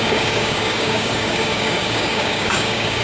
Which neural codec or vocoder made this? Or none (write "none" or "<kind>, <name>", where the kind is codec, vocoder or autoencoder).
codec, DAC